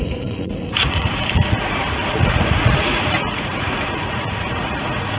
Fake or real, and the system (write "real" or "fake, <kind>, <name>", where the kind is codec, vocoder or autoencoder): fake, vocoder, Vocos